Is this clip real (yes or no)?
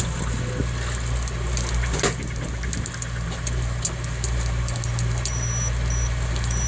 yes